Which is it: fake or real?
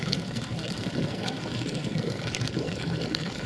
fake